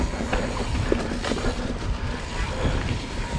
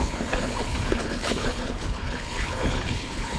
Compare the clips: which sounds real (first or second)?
first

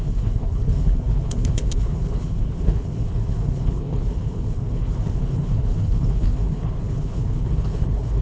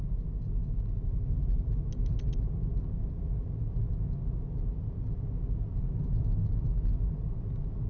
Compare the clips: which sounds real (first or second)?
second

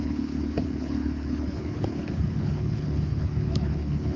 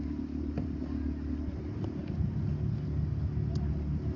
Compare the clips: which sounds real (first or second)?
second